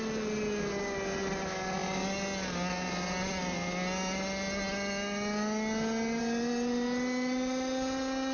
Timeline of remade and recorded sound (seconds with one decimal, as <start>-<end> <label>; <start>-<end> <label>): 0.0-8.3 recorded